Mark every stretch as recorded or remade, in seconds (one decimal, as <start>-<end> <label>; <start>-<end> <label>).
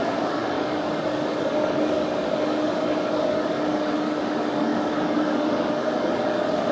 0.0-6.7 remade